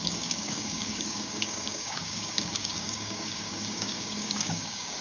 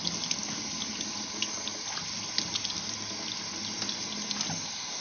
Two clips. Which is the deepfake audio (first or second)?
first